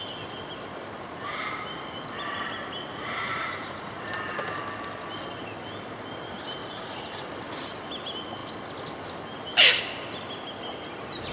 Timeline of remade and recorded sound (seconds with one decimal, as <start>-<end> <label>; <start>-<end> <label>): 0.0-2.9 recorded; 2.9-4.0 remade; 4.0-6.6 recorded; 6.6-7.2 remade; 7.2-11.3 recorded